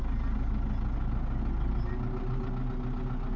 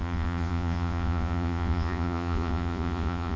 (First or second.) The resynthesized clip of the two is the second